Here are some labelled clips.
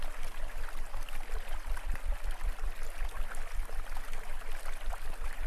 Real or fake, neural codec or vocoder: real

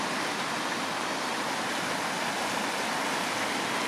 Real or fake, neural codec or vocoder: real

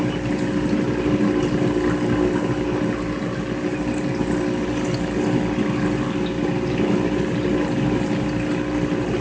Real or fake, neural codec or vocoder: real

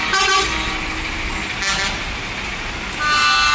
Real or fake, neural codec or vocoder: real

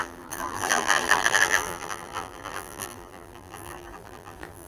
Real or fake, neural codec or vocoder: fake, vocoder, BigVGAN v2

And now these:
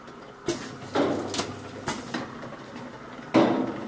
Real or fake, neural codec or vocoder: real